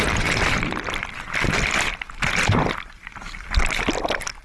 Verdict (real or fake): fake